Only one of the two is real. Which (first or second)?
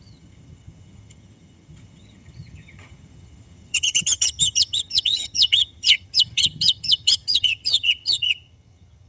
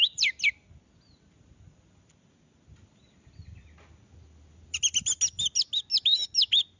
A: second